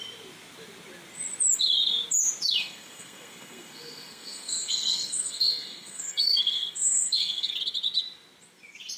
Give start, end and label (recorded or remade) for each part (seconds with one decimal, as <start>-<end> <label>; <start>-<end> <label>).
0.0-2.6 recorded; 2.6-7.5 remade; 7.5-9.0 recorded